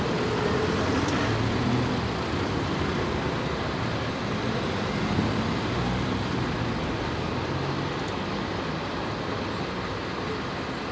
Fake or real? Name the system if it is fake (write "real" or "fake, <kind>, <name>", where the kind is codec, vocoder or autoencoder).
real